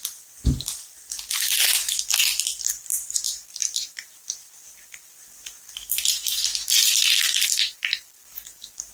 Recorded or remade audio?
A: recorded